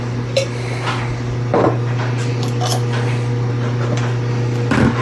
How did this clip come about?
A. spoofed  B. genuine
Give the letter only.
B